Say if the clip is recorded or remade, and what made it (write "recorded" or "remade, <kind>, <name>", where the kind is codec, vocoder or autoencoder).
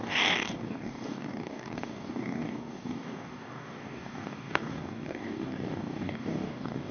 remade, codec, DAC